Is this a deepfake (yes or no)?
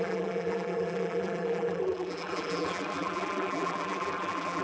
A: yes